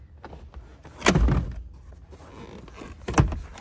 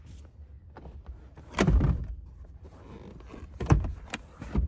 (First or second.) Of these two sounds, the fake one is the second